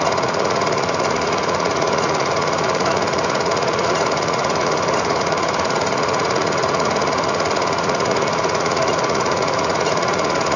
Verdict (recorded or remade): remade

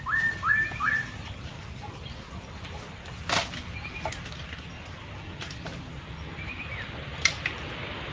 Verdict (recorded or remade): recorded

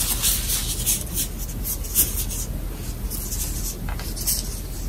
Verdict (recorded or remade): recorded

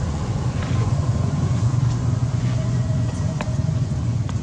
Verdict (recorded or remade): remade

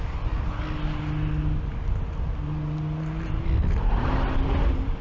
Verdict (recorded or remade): recorded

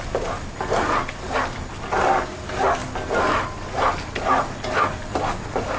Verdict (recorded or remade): recorded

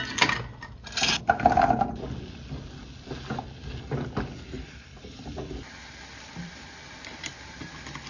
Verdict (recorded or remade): recorded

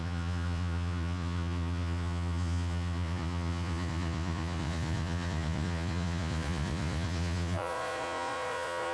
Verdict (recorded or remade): remade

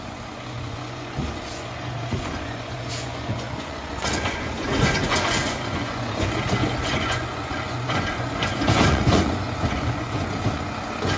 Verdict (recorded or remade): remade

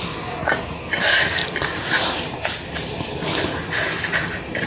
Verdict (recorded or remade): recorded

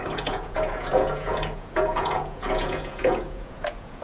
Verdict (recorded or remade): remade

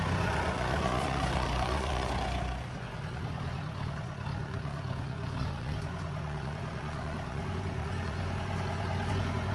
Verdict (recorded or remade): remade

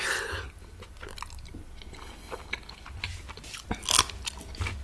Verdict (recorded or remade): recorded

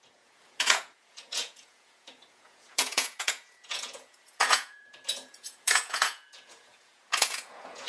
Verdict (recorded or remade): remade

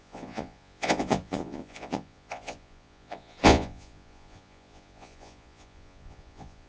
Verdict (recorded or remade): remade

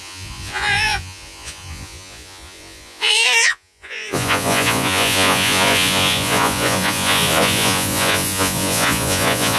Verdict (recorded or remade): remade